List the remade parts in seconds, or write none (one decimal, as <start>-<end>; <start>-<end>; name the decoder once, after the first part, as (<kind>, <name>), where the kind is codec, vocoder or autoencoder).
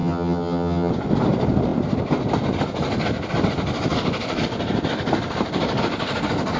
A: 0.0-0.9 (vocoder, HiFi-GAN)